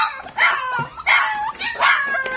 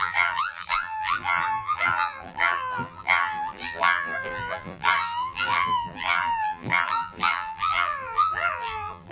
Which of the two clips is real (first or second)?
first